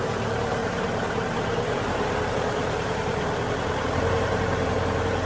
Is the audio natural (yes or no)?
no